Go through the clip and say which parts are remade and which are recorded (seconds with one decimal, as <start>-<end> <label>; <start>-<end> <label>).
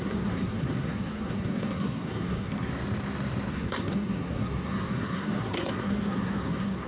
0.0-2.7 remade; 2.7-3.5 recorded; 3.5-6.9 remade